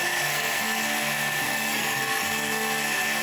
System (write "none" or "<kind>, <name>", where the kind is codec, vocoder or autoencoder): codec, SNAC